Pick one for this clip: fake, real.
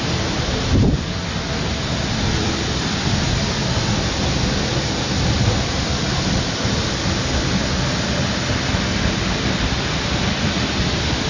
real